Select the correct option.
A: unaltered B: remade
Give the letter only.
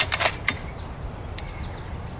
A